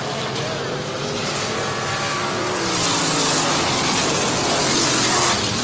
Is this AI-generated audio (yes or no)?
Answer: no